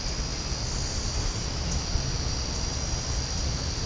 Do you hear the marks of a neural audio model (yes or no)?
no